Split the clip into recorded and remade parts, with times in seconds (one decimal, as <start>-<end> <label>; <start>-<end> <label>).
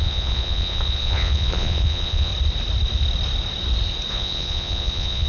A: 0.0-2.3 remade; 2.3-4.1 recorded; 4.1-5.3 remade